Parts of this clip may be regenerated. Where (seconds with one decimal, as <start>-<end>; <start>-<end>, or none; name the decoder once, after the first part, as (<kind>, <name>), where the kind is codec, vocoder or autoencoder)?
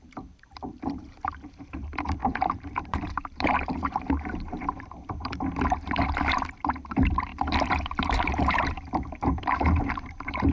0.0-10.5 (vocoder, BigVGAN v2)